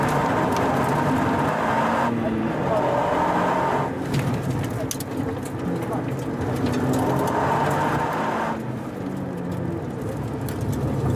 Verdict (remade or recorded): recorded